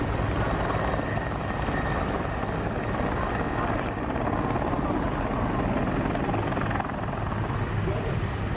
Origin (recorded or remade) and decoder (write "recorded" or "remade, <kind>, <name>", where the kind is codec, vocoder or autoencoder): recorded